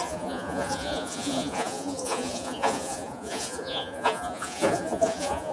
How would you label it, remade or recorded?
remade